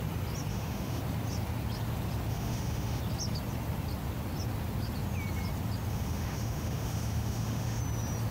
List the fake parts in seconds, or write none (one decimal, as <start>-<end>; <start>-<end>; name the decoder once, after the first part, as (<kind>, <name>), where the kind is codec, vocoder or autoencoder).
0.5-1.0 (autoencoder, DAC-VAE); 2.3-3.0; 5.9-7.8